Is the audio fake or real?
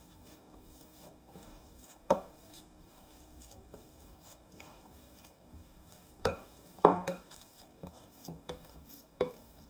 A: fake